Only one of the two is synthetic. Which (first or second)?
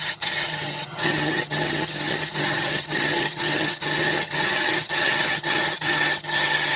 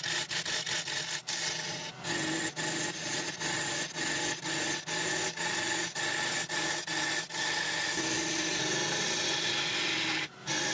first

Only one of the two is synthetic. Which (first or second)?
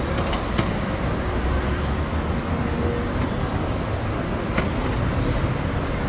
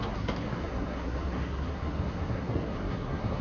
second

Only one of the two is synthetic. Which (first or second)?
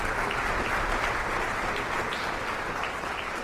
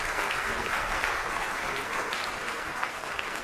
second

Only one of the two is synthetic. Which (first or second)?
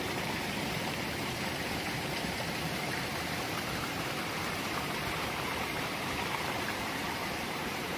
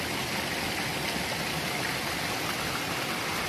first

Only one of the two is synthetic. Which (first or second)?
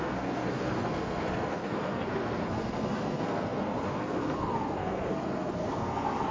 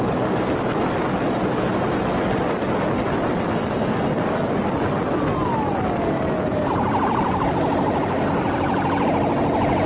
first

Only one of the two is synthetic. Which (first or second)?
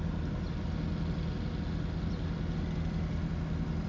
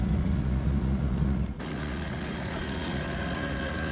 second